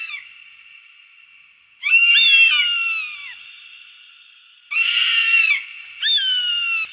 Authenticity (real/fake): real